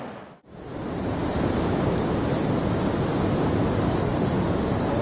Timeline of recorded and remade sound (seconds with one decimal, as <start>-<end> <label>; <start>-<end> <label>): 0.0-5.0 recorded